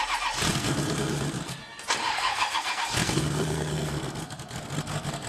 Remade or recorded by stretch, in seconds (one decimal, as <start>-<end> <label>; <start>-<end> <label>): 0.0-0.5 recorded; 0.5-1.6 remade; 1.6-2.0 recorded; 2.0-5.3 remade